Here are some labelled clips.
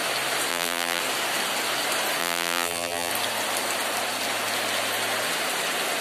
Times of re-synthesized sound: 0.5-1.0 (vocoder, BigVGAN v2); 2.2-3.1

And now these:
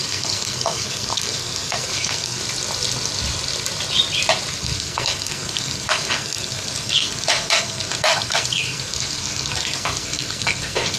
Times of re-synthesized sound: 0.0-2.4 (codec, SNAC); 4.5-11.0

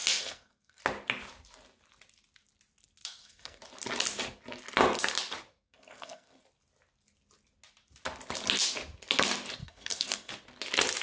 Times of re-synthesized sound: 0.0-0.8 (codec, SNAC); 3.0-3.6; 5.5-6.4; 9.6-10.3

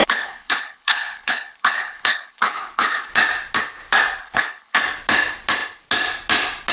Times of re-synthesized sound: 0.0-3.1 (codec, HILCodec); 4.2-4.8

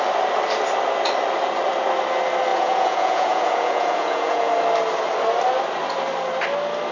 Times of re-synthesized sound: 2.5-4.5 (vocoder, Vocos)

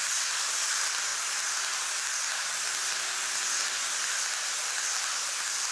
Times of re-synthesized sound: 0.0-1.1 (vocoder, BigVGAN v2); 4.2-5.7

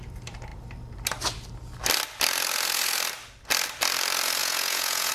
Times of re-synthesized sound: 4.4-5.1 (vocoder, Vocos)

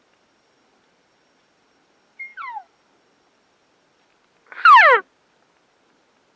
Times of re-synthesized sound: none